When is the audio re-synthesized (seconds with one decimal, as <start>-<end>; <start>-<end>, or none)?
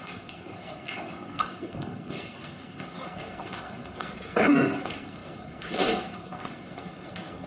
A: 0.0-7.5